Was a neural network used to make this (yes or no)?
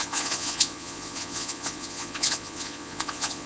yes